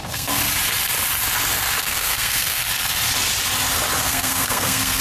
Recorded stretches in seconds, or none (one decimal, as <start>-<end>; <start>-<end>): 0.4-1.8; 2.6-4.0